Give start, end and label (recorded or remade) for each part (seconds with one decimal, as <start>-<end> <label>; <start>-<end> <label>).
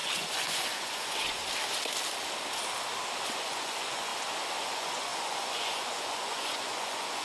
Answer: 0.0-1.4 remade; 1.4-3.2 recorded; 3.2-4.1 remade; 4.1-4.6 recorded; 4.6-7.2 remade